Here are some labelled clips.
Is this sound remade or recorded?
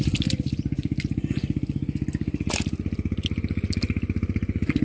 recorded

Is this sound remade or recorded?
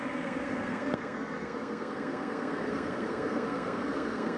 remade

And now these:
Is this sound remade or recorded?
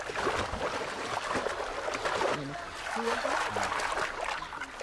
recorded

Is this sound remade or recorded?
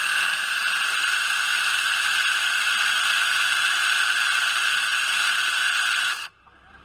recorded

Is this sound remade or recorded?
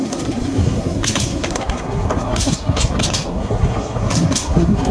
remade